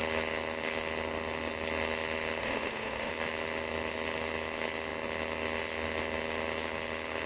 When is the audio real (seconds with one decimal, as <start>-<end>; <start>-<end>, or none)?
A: 0.0-2.4; 3.1-7.3